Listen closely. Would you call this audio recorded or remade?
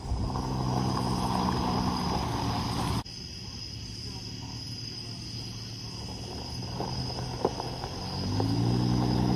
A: recorded